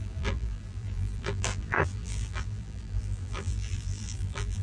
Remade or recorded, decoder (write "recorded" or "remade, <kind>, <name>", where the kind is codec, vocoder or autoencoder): remade, vocoder, BigVGAN v2